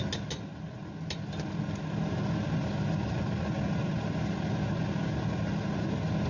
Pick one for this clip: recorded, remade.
recorded